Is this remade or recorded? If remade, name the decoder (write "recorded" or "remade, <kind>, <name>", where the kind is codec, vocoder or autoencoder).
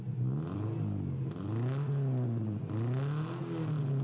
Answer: recorded